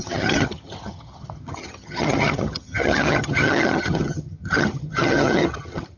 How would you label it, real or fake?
fake